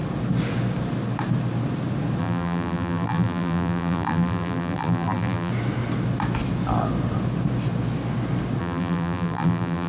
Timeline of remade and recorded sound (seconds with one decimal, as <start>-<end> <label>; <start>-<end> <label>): 0.0-2.2 recorded; 2.2-5.5 remade; 5.5-8.6 recorded; 8.6-9.9 remade